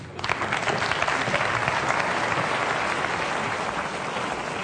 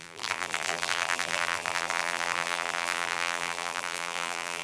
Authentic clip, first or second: first